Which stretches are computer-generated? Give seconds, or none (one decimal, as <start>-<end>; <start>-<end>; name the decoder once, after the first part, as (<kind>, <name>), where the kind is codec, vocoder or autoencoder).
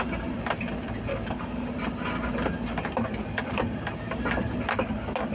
1.1-1.7 (codec, DAC)